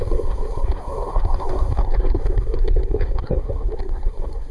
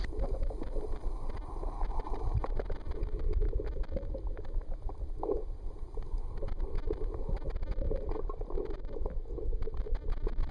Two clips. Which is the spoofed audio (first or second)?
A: first